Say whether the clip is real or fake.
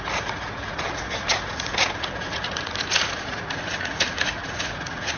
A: fake